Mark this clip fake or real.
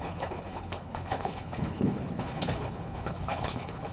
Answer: fake